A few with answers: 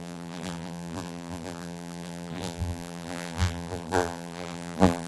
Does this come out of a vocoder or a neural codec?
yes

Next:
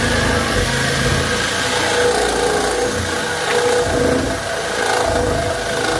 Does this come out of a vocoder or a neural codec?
no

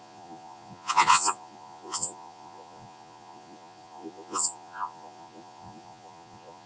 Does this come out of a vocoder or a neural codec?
yes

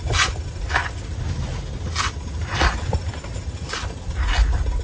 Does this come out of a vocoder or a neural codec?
no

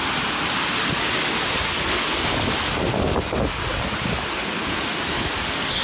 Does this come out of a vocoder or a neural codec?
no